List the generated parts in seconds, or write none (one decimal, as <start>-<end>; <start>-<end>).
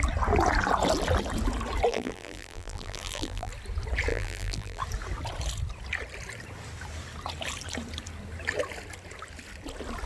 1.9-3.5; 4.1-4.8